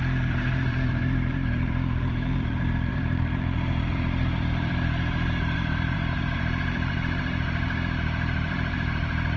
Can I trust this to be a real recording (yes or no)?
no